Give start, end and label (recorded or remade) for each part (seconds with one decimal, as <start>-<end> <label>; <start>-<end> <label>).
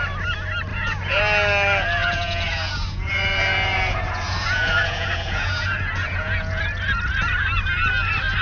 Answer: 0.0-0.7 recorded; 0.7-1.2 remade; 1.2-2.0 recorded; 2.0-6.6 remade; 6.6-8.4 recorded